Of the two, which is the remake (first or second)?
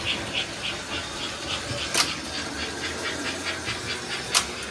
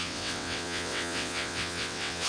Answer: second